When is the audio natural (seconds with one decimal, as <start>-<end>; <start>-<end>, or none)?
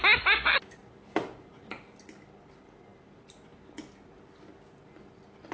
0.0-5.5